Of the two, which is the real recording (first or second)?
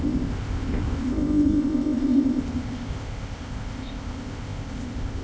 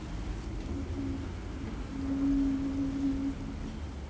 second